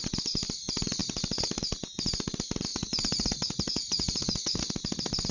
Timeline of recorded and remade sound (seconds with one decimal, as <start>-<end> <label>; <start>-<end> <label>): 0.0-2.7 recorded; 2.7-4.7 remade; 4.7-5.3 recorded